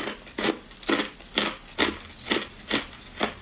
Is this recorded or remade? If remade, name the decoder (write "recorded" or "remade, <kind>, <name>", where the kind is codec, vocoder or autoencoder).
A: recorded